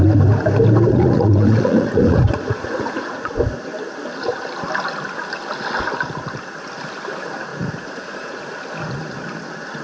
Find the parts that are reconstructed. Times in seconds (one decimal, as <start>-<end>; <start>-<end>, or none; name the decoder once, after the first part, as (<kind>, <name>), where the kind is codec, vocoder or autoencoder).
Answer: 0.9-3.3 (vocoder, Vocos); 7.5-8.5